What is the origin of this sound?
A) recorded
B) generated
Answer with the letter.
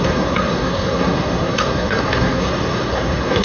B